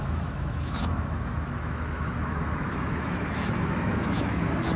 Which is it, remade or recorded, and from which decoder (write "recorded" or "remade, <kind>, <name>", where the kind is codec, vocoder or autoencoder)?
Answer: remade, autoencoder, DAC-VAE